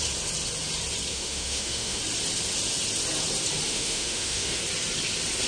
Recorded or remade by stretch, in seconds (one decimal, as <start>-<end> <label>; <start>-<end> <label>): 0.0-1.1 recorded; 1.1-2.0 remade; 2.0-3.7 recorded; 3.7-4.6 remade; 4.6-5.5 recorded